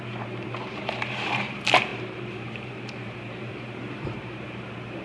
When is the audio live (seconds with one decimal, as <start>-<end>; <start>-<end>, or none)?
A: none